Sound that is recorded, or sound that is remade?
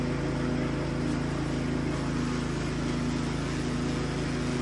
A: recorded